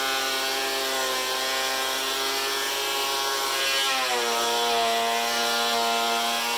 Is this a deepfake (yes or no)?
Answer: no